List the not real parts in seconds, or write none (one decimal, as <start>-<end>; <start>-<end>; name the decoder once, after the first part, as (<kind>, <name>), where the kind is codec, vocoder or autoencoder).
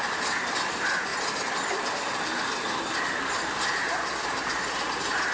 1.1-4.3 (vocoder, BigVGAN v2)